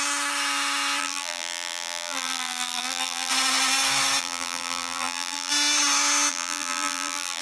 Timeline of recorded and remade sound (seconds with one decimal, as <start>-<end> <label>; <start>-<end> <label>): 0.0-1.0 recorded; 1.0-3.3 remade; 3.3-4.2 recorded; 4.2-5.5 remade; 5.5-6.3 recorded; 6.3-7.4 remade